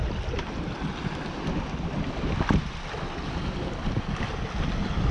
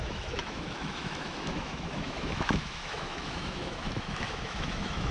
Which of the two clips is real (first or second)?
first